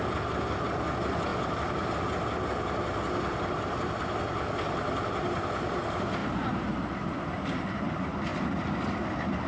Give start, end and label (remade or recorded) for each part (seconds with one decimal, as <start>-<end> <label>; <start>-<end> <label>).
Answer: 0.0-9.5 recorded